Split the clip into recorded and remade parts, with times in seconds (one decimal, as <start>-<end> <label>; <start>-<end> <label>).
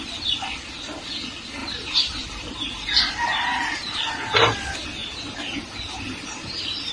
0.0-1.6 recorded; 1.6-4.0 remade; 4.0-5.0 recorded; 5.0-6.9 remade